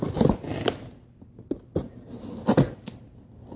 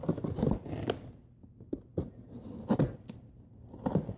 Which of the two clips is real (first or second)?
first